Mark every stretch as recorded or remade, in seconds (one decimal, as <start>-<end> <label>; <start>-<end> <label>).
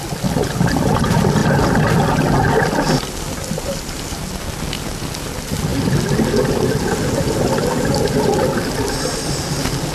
0.0-9.9 recorded